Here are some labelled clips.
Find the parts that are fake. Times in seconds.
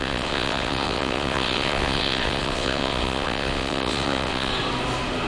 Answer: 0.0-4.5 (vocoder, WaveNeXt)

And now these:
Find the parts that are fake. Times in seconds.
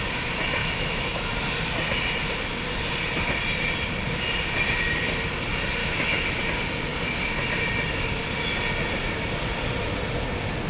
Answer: 0.6-1.3 (autoencoder, DAC-VAE); 5.8-6.4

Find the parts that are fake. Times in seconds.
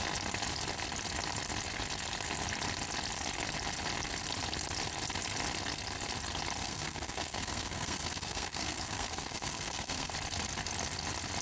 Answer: 6.6-10.1 (codec, SNAC)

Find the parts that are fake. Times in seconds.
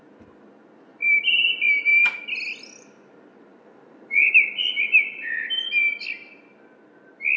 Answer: 3.5-5.5 (vocoder, BigVGAN v2)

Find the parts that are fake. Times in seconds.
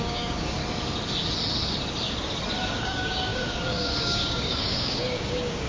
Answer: 0.0-0.6 (codec, DAC); 2.7-5.7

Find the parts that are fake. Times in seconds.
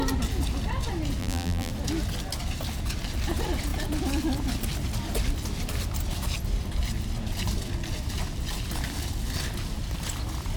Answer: 1.2-1.7 (vocoder, BigVGAN v2)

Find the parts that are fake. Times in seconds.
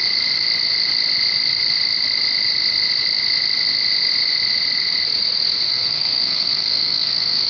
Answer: 5.7-7.5 (codec, SNAC)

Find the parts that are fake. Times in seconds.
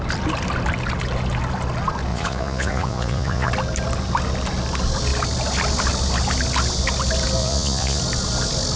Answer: 2.1-3.5 (vocoder, Vocos); 7.4-8.0